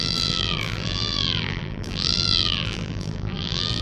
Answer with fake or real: fake